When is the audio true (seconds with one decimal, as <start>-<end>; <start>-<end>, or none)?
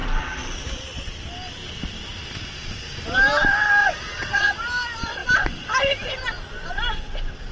0.0-3.8; 4.5-7.5